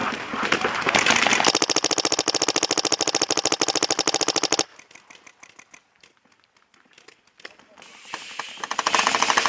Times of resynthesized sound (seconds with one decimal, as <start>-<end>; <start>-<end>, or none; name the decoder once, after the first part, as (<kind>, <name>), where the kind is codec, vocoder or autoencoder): 0.0-0.9 (vocoder, BigVGAN v2)